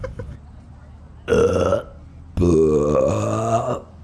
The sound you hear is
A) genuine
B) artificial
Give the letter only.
A